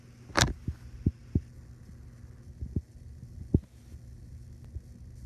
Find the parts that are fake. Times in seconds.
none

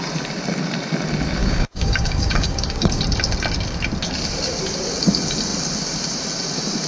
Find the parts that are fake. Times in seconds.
1.4-3.0 (codec, DAC)

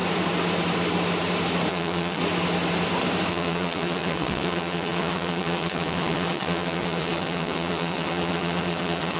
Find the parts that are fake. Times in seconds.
1.7-2.2 (vocoder, WaveNeXt); 3.3-9.2